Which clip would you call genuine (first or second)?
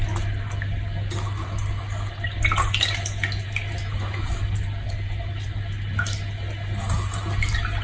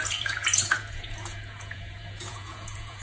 first